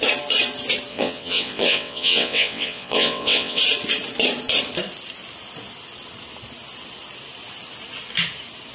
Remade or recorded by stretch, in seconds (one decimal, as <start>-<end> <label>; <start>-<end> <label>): 0.0-0.9 recorded; 0.9-3.6 remade; 3.6-8.7 recorded